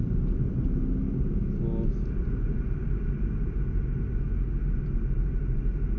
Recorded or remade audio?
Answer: recorded